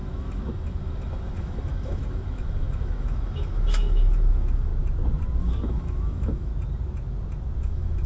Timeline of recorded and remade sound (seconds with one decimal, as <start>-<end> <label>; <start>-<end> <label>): 0.0-4.7 remade; 4.7-5.4 recorded; 5.4-6.5 remade; 6.5-7.6 recorded; 7.6-8.1 remade